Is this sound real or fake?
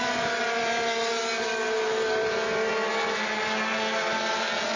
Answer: real